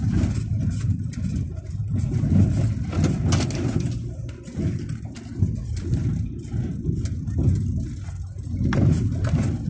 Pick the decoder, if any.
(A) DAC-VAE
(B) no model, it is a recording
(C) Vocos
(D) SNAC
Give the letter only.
B